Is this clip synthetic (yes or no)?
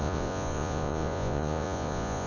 yes